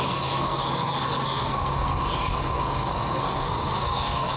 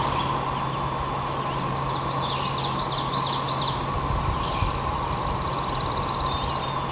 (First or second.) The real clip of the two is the second